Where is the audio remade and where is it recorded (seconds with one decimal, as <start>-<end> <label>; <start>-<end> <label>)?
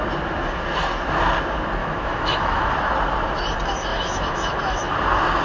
0.0-1.8 recorded; 1.8-2.7 remade; 2.7-3.9 recorded; 3.9-4.9 remade; 4.9-5.4 recorded